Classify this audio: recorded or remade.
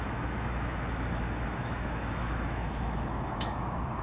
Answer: remade